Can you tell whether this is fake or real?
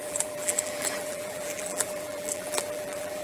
fake